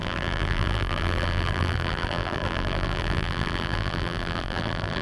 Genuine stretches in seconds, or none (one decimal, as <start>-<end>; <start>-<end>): none